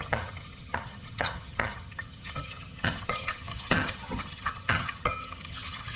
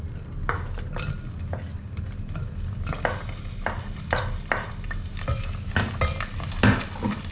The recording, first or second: second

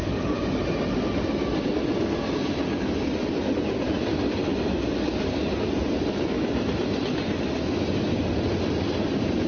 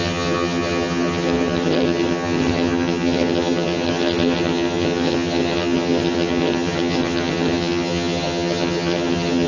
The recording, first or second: first